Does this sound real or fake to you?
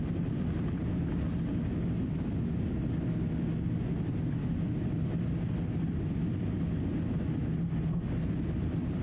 real